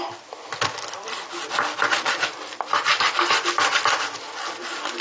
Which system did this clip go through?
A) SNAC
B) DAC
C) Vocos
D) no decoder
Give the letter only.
D